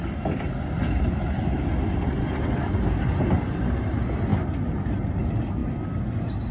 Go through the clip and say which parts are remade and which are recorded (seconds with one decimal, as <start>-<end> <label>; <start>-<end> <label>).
0.0-6.5 recorded